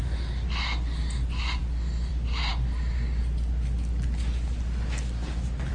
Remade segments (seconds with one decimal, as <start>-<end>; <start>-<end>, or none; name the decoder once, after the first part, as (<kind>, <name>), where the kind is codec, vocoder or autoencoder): none